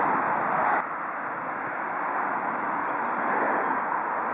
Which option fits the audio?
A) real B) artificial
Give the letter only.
A